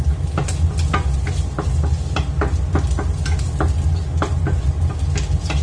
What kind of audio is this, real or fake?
real